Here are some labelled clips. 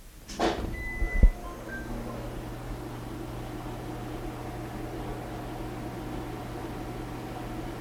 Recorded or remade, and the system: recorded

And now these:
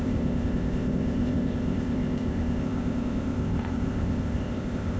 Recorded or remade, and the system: remade, codec, ZipCodec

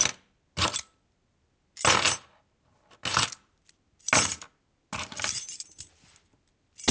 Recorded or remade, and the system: recorded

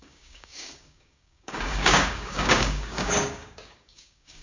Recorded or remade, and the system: remade, codec, DAC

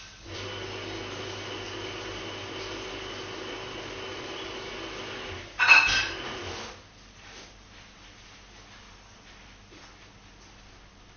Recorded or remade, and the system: recorded